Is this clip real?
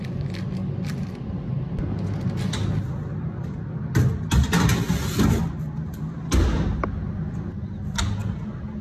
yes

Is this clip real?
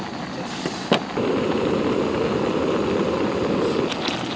yes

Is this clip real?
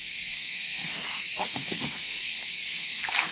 no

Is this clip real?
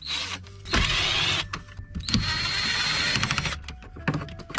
yes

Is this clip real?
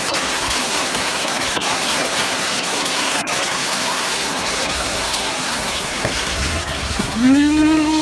no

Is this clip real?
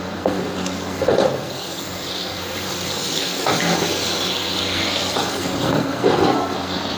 no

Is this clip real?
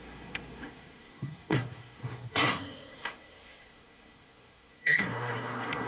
no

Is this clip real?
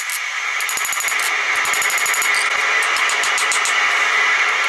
yes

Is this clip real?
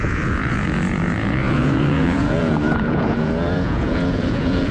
no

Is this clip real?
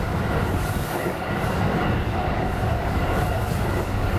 no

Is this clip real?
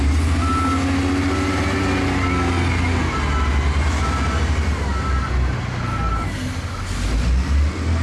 yes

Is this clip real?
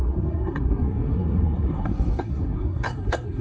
no